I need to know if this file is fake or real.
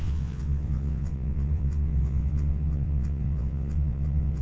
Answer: fake